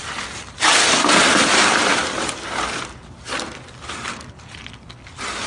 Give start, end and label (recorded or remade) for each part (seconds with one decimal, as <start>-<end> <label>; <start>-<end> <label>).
0.0-5.5 recorded